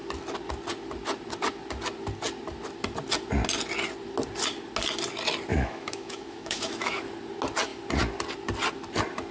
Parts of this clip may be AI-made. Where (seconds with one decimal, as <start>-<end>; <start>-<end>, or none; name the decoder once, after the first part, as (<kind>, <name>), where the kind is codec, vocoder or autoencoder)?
5.5-7.0 (autoencoder, DAC-VAE)